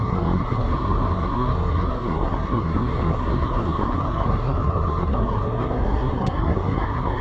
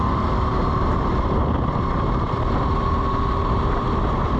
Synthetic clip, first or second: first